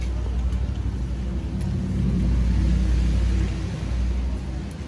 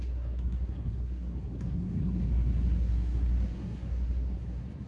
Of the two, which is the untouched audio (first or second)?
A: first